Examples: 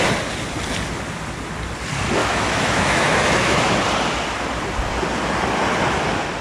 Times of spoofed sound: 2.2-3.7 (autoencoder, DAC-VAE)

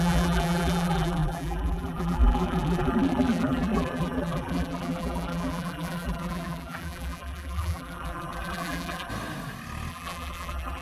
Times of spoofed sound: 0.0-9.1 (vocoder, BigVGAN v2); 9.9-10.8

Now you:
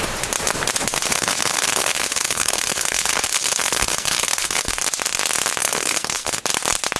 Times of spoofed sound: 0.9-4.7 (codec, SNAC); 5.6-6.4